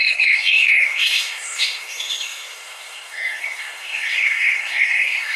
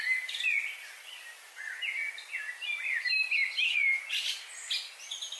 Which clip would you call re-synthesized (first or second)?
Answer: first